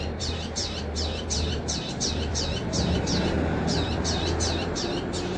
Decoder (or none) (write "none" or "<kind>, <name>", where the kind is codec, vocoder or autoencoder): vocoder, BigVGAN v2